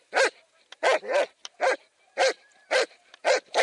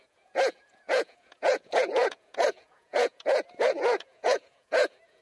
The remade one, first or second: second